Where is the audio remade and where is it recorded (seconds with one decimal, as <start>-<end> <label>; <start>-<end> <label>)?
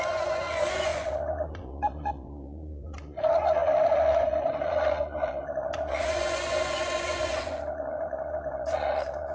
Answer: 0.0-9.3 remade